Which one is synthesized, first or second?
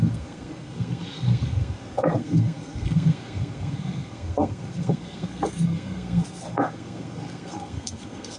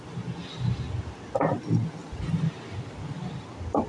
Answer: first